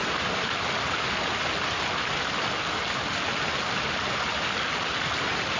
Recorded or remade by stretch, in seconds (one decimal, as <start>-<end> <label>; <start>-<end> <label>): 0.0-5.6 recorded